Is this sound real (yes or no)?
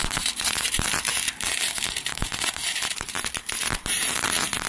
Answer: no